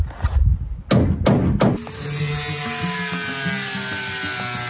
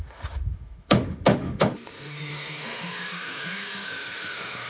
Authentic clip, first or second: first